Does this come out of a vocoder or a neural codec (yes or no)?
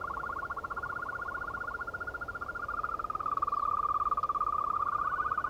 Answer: no